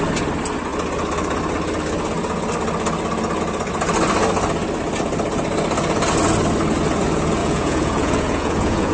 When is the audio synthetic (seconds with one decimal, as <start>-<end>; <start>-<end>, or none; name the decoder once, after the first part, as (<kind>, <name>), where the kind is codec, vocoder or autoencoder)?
7.4-8.9 (vocoder, Vocos)